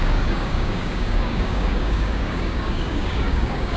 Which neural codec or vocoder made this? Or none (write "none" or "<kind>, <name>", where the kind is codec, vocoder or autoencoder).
codec, DAC